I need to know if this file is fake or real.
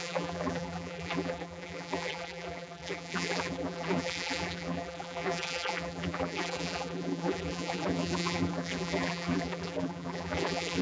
fake